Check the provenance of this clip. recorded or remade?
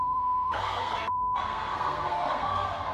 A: remade